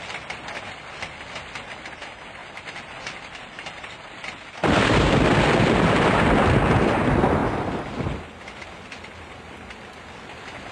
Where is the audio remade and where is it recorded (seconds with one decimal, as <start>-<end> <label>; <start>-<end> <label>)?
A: 0.0-2.4 recorded; 2.4-6.2 remade; 6.2-10.7 recorded